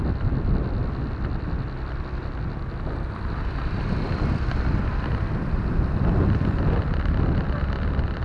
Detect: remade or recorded recorded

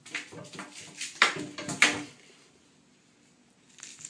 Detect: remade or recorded recorded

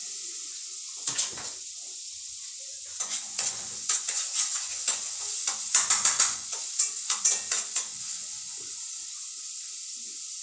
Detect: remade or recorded remade